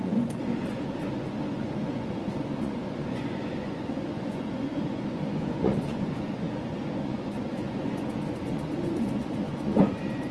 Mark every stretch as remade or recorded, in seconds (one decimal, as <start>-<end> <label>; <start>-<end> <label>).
0.0-10.3 remade